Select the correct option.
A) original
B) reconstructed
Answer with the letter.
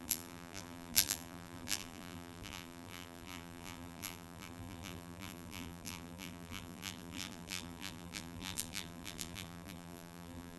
B